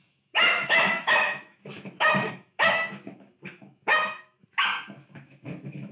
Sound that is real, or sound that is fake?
fake